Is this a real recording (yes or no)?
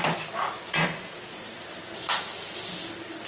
yes